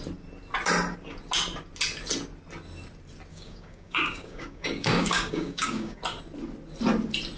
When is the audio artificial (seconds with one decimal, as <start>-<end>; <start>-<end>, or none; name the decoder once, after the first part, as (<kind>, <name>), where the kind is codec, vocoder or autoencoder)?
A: 3.3-6.0 (codec, DAC)

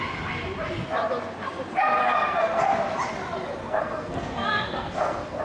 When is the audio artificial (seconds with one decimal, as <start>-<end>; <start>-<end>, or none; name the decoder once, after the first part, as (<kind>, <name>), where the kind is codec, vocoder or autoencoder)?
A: 2.0-2.6 (codec, SNAC); 3.6-5.4